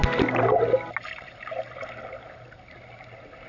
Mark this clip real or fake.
real